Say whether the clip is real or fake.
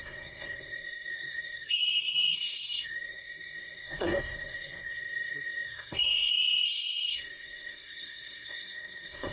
fake